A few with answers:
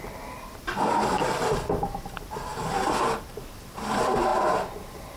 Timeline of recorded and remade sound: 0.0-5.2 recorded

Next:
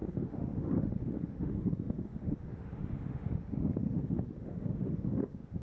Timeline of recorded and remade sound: 0.0-5.6 remade